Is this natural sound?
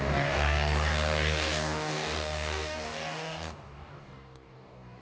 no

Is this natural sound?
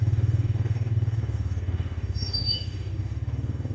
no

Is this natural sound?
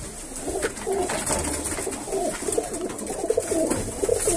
yes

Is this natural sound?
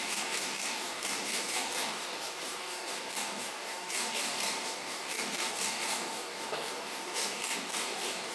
no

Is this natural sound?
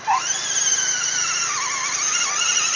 yes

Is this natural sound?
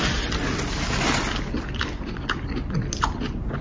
yes